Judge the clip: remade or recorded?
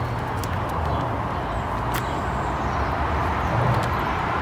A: recorded